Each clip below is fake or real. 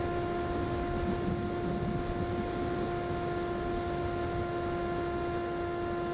real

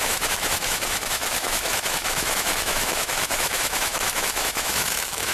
fake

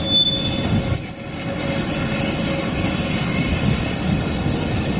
real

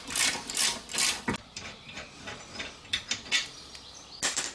real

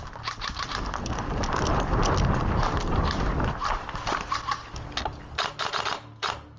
real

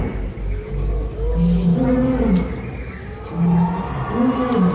real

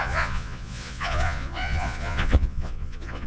fake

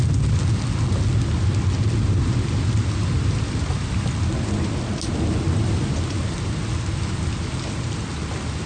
real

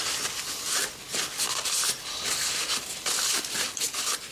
real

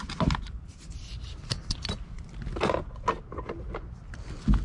real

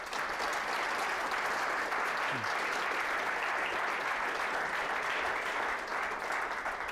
real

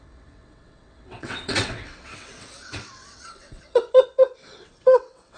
fake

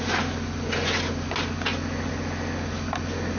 real